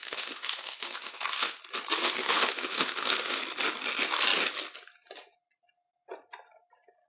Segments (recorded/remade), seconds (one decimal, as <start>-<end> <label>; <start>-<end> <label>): 0.0-1.6 remade; 1.6-2.0 recorded; 2.0-3.4 remade; 3.4-7.1 recorded